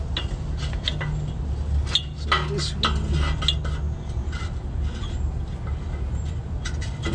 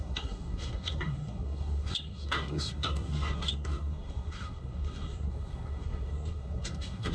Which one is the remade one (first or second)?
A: second